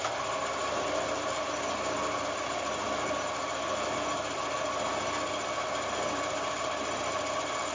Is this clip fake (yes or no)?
no